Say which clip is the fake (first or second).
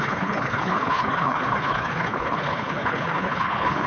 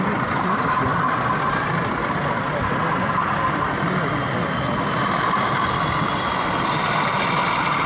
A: first